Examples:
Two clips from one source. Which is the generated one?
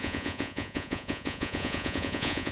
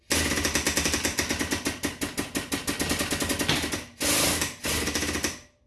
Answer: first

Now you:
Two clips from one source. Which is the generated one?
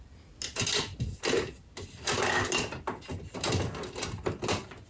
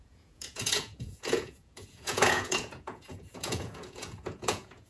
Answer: second